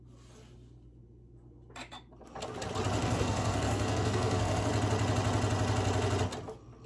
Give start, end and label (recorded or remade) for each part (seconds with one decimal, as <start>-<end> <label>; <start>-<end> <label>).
0.0-3.0 recorded; 3.0-4.7 remade; 4.7-6.9 recorded